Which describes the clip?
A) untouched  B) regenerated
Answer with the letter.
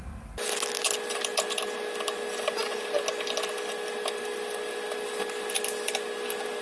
A